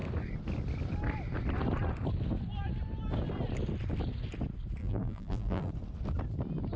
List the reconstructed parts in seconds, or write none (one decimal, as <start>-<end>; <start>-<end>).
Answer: 4.8-5.7